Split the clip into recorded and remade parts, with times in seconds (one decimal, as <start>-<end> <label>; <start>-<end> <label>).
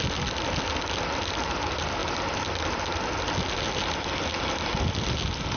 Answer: 0.0-5.6 recorded